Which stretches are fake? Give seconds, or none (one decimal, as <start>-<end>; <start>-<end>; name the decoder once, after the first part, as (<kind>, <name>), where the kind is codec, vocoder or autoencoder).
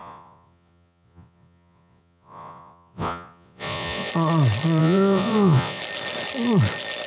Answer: 0.0-4.1 (vocoder, Vocos); 4.8-5.8